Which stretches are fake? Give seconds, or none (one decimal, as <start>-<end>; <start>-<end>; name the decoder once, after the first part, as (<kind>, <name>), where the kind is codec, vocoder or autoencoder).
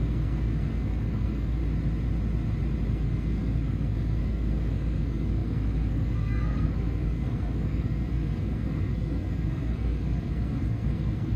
0.0-1.6 (codec, SNAC); 2.9-11.4